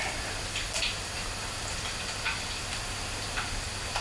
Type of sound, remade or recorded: remade